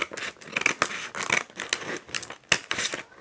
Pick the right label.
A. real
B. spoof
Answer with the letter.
A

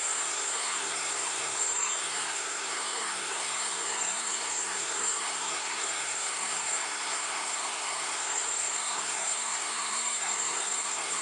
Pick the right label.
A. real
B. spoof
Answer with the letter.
B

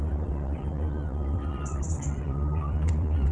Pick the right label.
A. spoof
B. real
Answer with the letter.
A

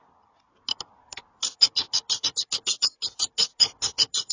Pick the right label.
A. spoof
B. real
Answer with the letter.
B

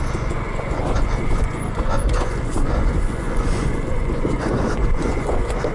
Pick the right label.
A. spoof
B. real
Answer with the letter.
A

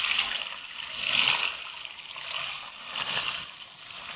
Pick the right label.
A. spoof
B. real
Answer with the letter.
B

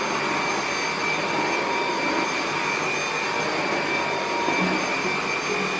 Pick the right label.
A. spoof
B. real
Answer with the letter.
B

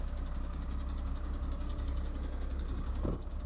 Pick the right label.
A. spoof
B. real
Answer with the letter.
A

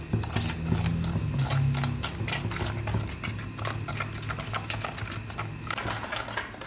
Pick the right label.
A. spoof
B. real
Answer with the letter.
B